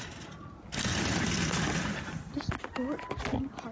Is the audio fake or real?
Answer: real